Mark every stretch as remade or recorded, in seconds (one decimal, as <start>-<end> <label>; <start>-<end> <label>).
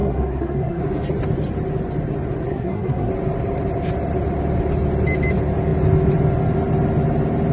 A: 0.0-0.8 remade; 0.8-2.5 recorded; 2.5-3.1 remade; 3.1-7.5 recorded